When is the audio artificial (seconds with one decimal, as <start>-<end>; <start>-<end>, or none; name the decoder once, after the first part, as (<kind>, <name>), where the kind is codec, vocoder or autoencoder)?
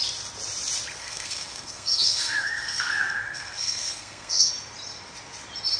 1.0-4.5 (codec, SNAC)